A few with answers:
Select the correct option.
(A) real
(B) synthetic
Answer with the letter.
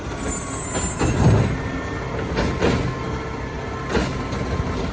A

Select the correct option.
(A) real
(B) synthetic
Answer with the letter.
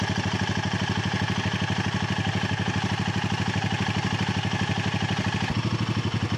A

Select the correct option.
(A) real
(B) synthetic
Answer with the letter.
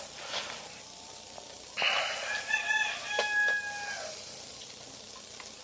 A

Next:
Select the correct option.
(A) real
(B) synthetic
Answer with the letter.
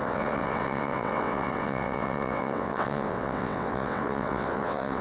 B